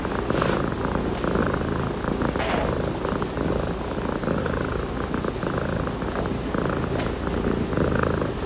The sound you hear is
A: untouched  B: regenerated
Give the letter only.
A